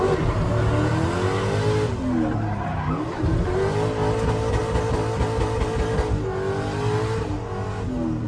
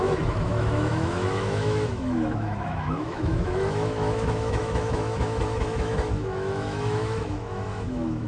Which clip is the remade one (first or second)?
second